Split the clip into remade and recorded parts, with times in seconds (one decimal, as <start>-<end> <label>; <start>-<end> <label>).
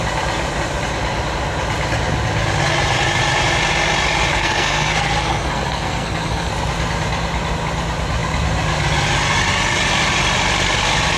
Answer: 0.0-4.3 recorded; 4.3-6.5 remade; 6.5-11.2 recorded